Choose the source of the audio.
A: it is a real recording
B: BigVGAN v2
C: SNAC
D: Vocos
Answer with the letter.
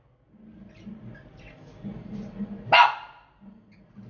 A